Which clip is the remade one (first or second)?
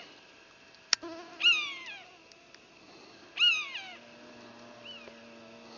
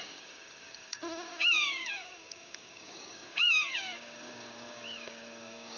second